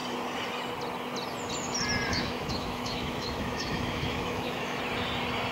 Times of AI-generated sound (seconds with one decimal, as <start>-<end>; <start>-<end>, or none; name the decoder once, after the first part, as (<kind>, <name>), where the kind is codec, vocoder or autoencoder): 2.1-4.8 (autoencoder, DAC-VAE)